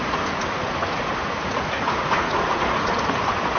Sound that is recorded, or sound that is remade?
remade